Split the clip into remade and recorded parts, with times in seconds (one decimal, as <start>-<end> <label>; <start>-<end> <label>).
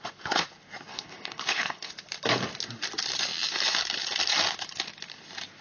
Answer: 0.0-0.9 recorded; 0.9-1.9 remade; 1.9-5.6 recorded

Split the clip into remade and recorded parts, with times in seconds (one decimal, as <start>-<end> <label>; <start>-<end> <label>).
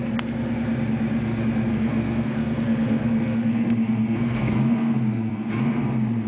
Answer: 0.0-1.7 recorded; 1.7-5.5 remade; 5.5-6.3 recorded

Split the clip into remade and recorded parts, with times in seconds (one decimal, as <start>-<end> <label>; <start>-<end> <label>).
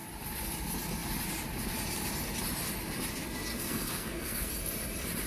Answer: 0.0-3.5 recorded; 3.5-4.5 remade; 4.5-5.3 recorded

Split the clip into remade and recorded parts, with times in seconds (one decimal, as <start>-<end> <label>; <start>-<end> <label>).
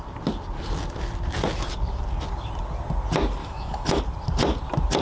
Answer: 0.0-3.4 recorded; 3.4-4.0 remade; 4.0-5.0 recorded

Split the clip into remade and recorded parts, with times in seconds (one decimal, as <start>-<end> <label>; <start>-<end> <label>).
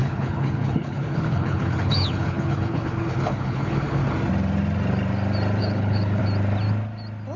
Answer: 0.0-4.0 remade; 4.0-5.6 recorded; 5.6-6.2 remade; 6.2-7.4 recorded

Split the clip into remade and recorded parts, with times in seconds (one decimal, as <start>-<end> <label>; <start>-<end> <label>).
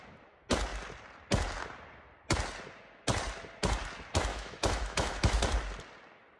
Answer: 0.0-4.3 recorded; 4.3-5.4 remade; 5.4-6.4 recorded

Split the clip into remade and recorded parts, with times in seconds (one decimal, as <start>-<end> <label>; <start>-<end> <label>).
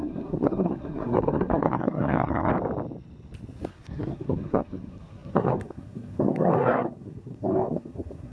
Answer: 0.0-2.5 remade; 2.5-3.7 recorded; 3.7-8.3 remade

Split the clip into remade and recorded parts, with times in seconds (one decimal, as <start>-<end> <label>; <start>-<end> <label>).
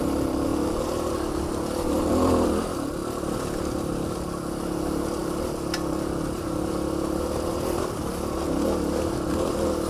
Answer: 0.0-0.5 recorded; 0.5-2.1 remade; 2.1-3.0 recorded; 3.0-3.6 remade; 3.6-9.9 recorded